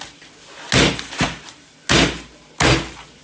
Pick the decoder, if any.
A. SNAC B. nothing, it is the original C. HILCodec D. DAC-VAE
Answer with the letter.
B